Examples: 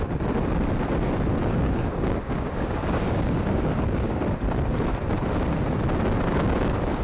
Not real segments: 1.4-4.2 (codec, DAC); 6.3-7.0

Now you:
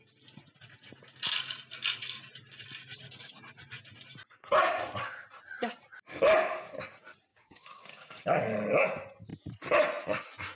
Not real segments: 7.3-8.4 (codec, DAC)

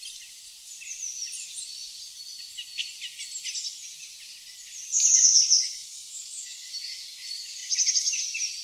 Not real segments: 5.7-6.7 (codec, DAC)

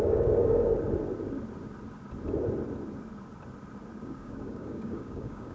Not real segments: 0.0-0.7 (codec, DAC); 4.0-5.5